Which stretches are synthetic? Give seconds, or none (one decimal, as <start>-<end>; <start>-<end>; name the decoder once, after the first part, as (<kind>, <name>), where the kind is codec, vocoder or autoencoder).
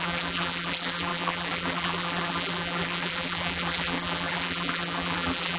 0.0-5.6 (vocoder, BigVGAN v2)